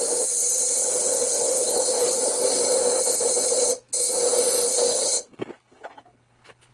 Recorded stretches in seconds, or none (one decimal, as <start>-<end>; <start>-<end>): 0.0-0.8; 2.4-4.9